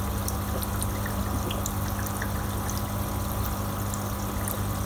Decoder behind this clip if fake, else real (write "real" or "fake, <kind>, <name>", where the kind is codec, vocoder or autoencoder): real